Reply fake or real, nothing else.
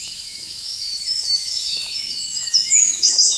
fake